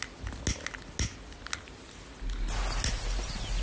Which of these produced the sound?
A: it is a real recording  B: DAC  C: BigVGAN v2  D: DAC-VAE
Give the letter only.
A